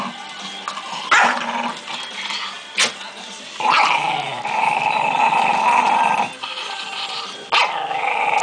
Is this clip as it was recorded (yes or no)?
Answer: yes